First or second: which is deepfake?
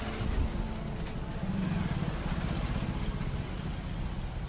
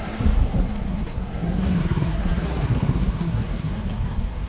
second